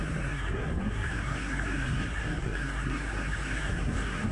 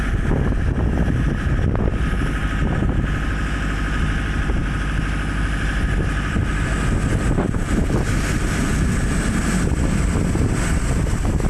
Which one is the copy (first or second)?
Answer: first